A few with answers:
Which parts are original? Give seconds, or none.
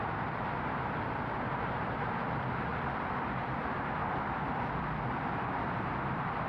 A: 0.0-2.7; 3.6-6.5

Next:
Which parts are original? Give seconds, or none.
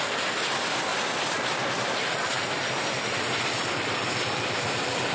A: 0.0-0.9; 1.9-5.1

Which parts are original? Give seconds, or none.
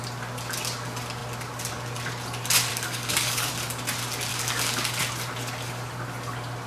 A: 0.0-2.7; 3.5-4.3; 5.0-6.7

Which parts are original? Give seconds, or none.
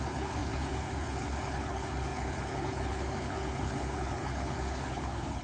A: none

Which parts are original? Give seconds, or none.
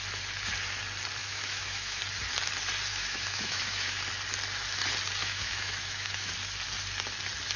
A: 0.0-1.2; 2.0-2.9; 4.0-5.2; 6.3-7.6